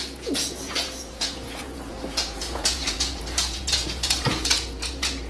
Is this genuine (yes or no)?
no